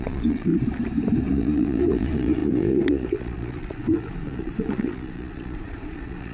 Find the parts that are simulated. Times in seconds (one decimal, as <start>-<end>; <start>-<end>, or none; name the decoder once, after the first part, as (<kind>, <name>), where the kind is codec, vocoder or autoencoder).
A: 0.0-0.5 (vocoder, Vocos); 1.3-6.3